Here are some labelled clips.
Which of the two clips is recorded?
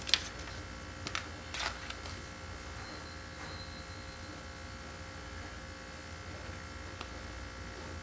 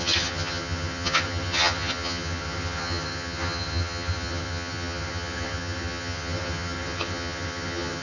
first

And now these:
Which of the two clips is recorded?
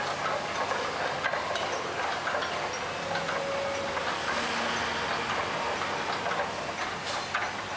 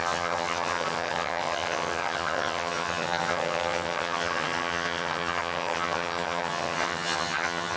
first